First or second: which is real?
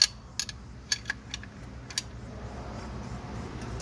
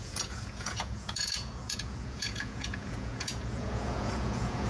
first